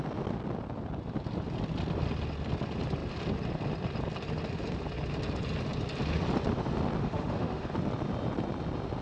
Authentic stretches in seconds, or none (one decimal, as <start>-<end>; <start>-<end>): 0.0-7.0; 7.7-9.0